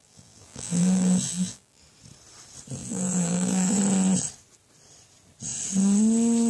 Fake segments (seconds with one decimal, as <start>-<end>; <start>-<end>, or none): 0.0-1.8; 2.8-3.8